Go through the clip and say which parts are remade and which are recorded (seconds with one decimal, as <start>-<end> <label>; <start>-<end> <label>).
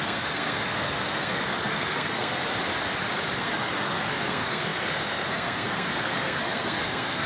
0.0-2.4 remade; 2.4-3.4 recorded; 3.4-7.3 remade